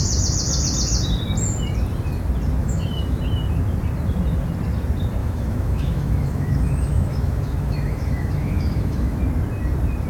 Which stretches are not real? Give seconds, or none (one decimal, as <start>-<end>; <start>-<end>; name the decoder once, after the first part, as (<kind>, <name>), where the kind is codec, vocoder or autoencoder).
2.6-3.2 (autoencoder, DAC-VAE); 5.2-9.2